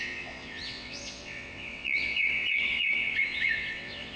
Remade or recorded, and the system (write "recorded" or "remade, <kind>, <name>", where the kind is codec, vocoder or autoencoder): remade, vocoder, WaveNeXt